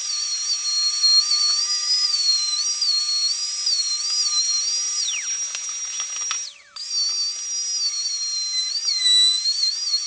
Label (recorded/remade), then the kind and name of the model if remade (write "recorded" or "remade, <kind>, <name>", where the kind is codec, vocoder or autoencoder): recorded